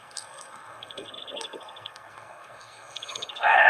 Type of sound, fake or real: fake